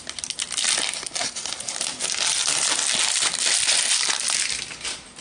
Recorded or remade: recorded